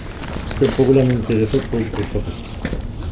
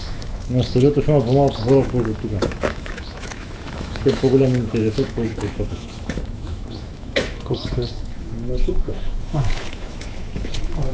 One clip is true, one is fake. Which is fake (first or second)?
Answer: second